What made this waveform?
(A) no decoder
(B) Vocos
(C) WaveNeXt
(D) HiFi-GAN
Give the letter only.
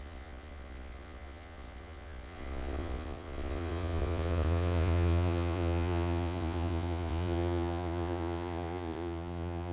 B